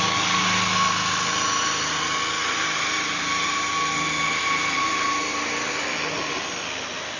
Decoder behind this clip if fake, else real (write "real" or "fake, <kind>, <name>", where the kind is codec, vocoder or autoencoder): real